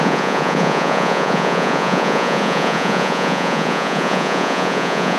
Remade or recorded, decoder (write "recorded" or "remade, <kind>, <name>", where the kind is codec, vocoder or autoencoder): remade, vocoder, Vocos